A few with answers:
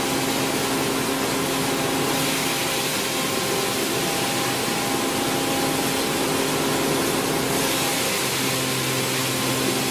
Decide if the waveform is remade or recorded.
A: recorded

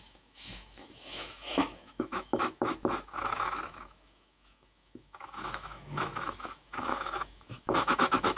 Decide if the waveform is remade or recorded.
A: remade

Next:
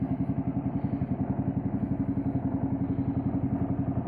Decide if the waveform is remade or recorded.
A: recorded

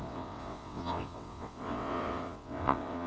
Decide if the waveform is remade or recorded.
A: remade